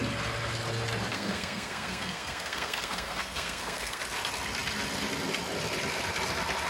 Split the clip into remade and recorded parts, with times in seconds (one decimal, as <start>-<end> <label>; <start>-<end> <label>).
0.0-1.1 recorded; 1.1-4.0 remade; 4.0-6.7 recorded